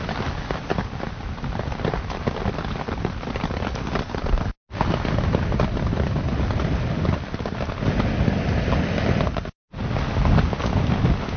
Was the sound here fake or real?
real